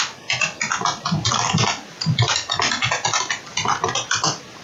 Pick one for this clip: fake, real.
fake